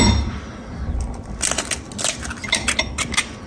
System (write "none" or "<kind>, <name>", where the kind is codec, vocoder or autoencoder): none